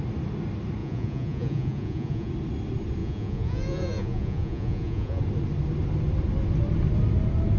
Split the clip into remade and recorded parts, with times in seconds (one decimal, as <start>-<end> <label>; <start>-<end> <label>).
0.0-0.8 recorded; 0.8-2.3 remade; 2.3-3.0 recorded; 3.0-5.2 remade; 5.2-7.6 recorded